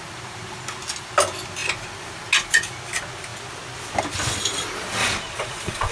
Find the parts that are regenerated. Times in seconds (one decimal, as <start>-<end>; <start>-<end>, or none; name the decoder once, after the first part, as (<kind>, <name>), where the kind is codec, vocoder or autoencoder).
5.0-5.9 (vocoder, Vocos)